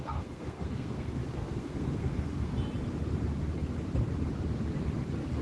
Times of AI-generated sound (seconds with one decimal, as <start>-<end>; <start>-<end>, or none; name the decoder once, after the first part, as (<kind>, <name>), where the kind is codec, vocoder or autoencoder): 0.0-2.5 (codec, SNAC)